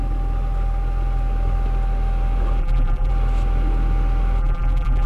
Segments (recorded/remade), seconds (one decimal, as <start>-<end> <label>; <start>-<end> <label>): 0.0-2.6 recorded; 2.6-3.1 remade; 3.1-4.4 recorded; 4.4-5.1 remade